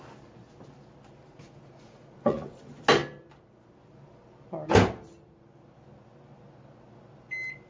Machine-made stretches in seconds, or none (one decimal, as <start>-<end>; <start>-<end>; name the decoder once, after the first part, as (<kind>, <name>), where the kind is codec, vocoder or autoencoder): 1.3-2.6 (vocoder, Vocos)